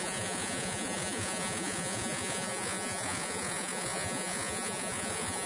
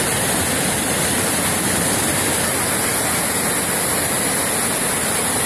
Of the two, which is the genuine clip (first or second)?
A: second